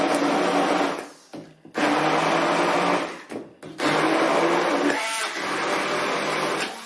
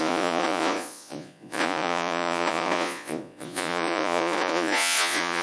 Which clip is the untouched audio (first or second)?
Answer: first